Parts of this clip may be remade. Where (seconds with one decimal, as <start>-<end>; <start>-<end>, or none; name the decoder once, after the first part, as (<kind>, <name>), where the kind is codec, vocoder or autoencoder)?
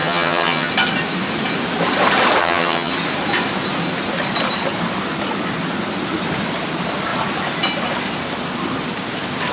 0.0-0.7 (vocoder, HiFi-GAN); 2.4-2.9